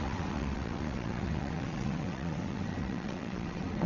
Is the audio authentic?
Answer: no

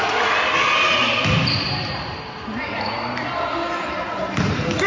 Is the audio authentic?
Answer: yes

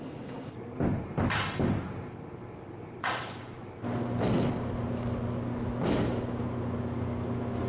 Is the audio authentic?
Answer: yes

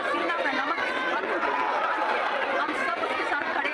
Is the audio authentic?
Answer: no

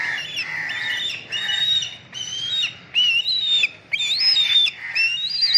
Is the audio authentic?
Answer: yes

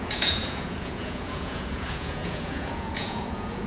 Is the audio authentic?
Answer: no